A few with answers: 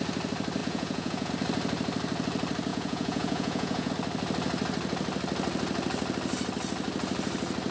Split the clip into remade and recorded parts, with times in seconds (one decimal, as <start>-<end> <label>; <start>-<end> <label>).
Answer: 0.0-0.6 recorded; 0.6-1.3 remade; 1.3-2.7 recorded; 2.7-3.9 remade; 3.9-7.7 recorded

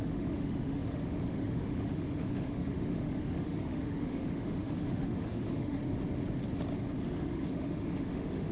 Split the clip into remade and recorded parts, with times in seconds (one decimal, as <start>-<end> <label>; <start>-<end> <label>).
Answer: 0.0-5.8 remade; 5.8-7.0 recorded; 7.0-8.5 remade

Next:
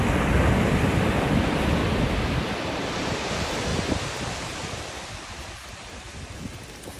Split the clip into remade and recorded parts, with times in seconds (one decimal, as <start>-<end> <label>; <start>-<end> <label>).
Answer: 0.0-1.8 remade; 1.8-2.9 recorded; 2.9-3.7 remade; 3.7-4.4 recorded; 4.4-7.0 remade

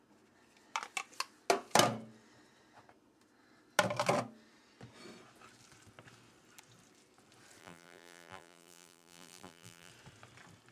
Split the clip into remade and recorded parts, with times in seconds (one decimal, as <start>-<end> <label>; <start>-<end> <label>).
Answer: 0.0-7.6 recorded; 7.6-9.9 remade; 9.9-10.7 recorded